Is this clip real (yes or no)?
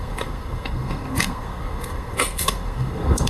no